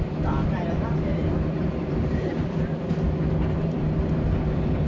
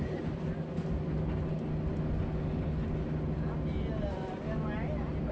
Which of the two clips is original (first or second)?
second